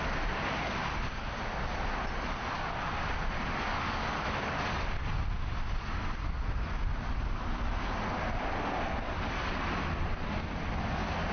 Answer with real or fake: real